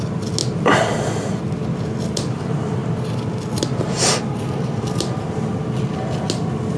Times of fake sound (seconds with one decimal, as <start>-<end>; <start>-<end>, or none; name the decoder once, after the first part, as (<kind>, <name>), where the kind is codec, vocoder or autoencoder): none